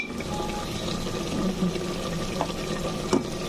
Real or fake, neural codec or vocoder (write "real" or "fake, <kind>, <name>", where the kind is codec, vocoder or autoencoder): real